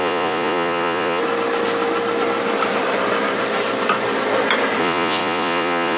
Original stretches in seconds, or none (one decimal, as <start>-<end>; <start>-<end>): 1.2-4.8